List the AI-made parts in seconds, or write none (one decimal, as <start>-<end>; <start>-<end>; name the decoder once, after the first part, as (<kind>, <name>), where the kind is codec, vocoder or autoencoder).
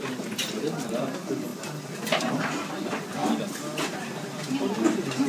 none